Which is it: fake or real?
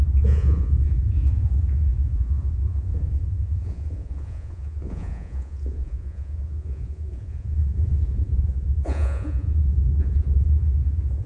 fake